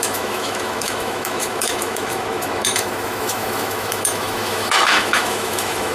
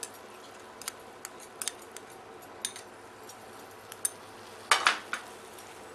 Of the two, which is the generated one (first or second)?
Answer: first